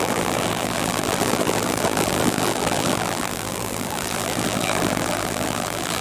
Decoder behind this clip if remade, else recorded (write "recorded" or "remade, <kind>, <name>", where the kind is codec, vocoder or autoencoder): remade, vocoder, BigVGAN v2